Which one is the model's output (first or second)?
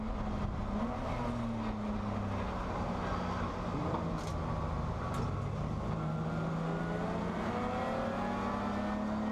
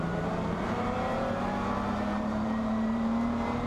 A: second